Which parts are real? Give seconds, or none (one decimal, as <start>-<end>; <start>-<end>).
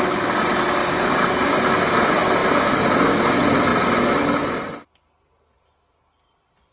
0.0-0.8; 1.5-6.7